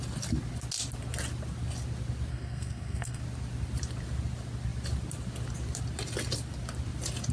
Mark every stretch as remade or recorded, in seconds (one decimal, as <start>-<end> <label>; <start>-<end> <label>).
0.0-2.3 recorded; 2.3-3.2 remade; 3.2-7.3 recorded